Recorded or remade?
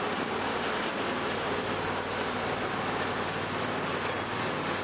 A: recorded